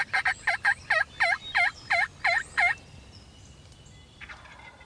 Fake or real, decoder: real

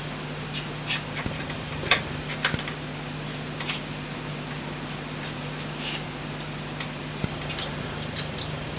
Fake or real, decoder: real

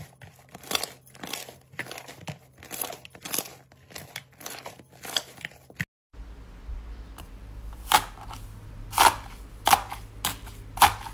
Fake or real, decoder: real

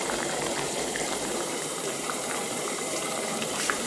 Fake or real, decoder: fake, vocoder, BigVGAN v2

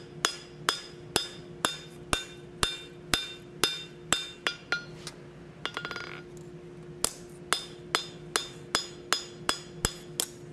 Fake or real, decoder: real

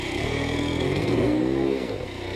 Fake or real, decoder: fake, codec, SNAC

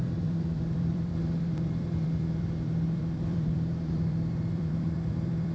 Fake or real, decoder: fake, vocoder, BigVGAN v2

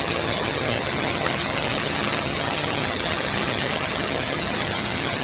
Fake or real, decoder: fake, vocoder, HiFi-GAN